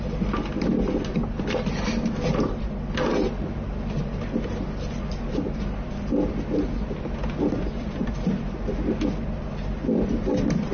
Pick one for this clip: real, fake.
real